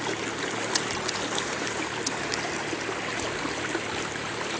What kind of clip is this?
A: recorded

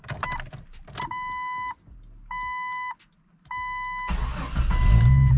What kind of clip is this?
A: recorded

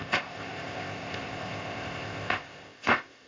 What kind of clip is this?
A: remade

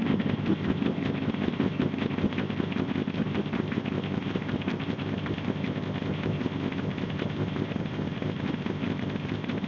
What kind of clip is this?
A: remade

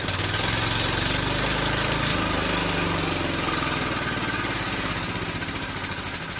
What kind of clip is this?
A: recorded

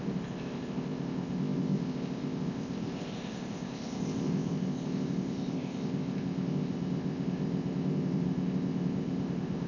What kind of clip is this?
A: remade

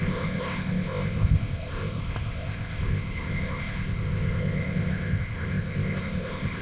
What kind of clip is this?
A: remade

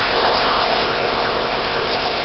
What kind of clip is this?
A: remade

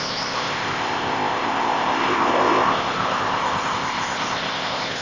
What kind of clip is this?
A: remade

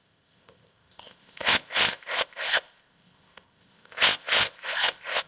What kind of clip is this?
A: remade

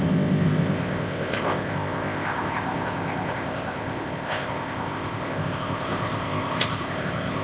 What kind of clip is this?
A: remade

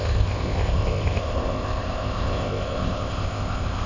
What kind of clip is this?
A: remade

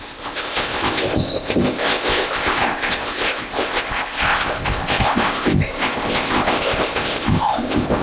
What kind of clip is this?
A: remade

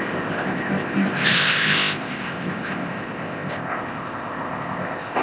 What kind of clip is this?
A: remade